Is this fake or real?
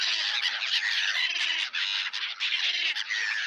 real